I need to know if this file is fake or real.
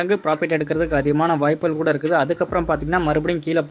fake